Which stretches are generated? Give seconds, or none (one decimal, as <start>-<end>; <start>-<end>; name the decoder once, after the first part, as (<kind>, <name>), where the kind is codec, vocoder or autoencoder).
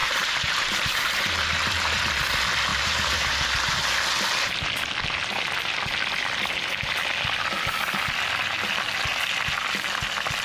0.0-2.0 (vocoder, BigVGAN v2); 2.7-3.8